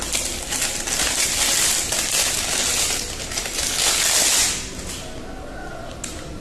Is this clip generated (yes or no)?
no